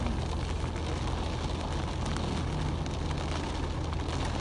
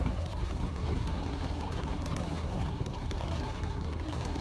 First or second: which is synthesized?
second